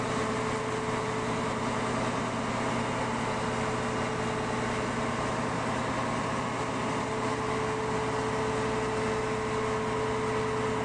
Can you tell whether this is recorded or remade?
recorded